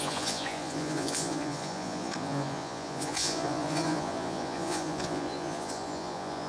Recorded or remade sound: remade